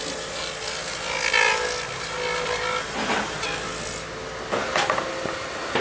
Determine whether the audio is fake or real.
real